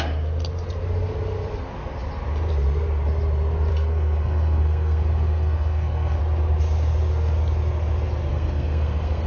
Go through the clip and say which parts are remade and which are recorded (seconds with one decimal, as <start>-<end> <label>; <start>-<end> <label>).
0.0-3.7 recorded; 3.7-6.2 remade; 6.2-8.3 recorded; 8.3-9.3 remade